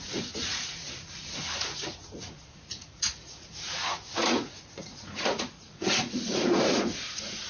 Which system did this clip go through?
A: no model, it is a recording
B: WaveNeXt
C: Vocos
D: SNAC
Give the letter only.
C